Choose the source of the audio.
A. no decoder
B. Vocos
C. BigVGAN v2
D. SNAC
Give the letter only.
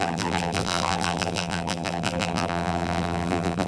C